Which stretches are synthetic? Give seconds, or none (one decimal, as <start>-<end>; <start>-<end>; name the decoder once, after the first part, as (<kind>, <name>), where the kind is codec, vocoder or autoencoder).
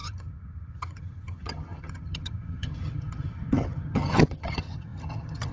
0.0-5.5 (vocoder, HiFi-GAN)